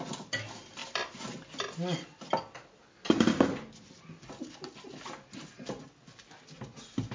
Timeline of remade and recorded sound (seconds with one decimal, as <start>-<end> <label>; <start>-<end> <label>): 0.0-7.1 recorded